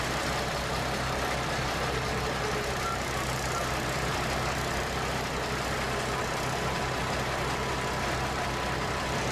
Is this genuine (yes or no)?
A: yes